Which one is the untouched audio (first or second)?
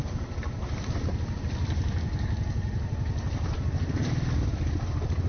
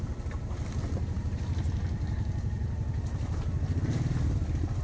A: second